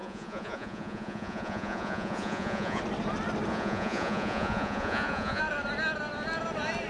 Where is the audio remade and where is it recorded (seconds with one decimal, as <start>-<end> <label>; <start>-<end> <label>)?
0.0-2.8 remade; 2.8-3.5 recorded; 3.5-5.4 remade; 5.4-6.9 recorded